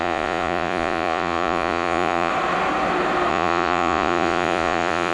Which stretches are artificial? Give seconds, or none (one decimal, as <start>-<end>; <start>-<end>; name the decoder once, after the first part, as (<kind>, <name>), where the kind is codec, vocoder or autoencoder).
0.0-2.3 (vocoder, Vocos); 3.3-5.1